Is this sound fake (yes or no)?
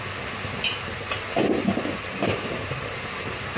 no